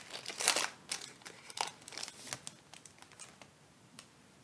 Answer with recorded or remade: recorded